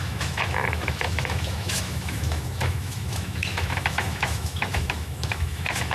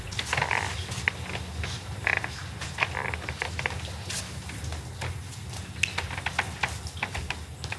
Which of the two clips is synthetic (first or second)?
first